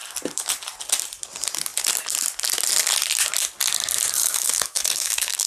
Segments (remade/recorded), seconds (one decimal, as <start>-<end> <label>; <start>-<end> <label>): 0.0-4.2 recorded; 4.2-5.5 remade